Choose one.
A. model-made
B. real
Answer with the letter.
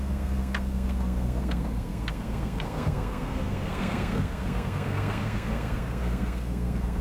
A